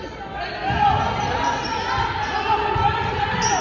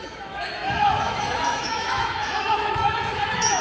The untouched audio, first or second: first